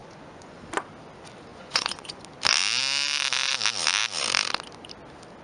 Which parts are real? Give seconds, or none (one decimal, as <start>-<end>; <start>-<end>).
0.6-1.5; 2.2-5.4